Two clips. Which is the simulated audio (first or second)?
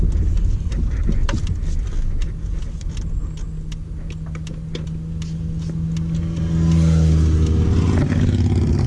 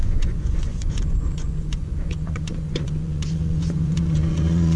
second